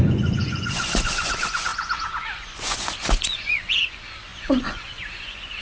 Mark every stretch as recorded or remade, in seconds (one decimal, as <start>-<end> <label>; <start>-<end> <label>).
0.0-5.6 remade